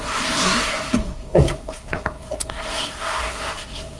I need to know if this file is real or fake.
fake